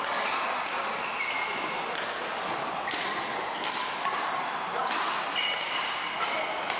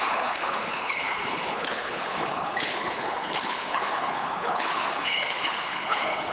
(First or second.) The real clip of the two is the first